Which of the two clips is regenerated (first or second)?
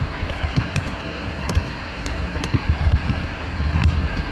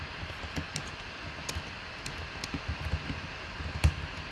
first